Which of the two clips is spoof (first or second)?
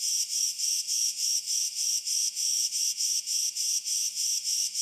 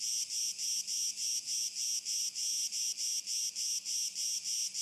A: first